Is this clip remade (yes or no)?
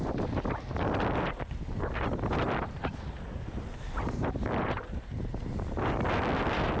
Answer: no